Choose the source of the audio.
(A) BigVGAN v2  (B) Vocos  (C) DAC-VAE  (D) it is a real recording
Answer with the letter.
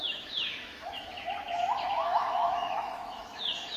C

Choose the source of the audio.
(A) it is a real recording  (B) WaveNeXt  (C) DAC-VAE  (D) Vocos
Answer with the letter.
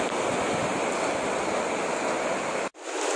A